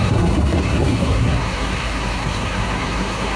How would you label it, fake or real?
fake